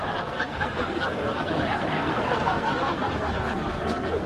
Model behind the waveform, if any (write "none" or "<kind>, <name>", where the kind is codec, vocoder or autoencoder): codec, SNAC